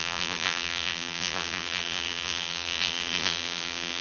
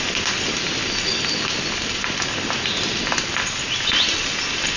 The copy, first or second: first